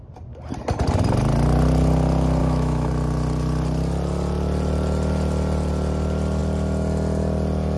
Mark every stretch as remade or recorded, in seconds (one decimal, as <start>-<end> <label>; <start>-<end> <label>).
0.0-2.4 recorded; 2.4-2.9 remade; 2.9-7.8 recorded